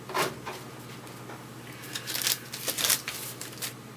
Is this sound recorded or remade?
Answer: recorded